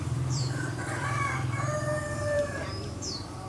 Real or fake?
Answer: fake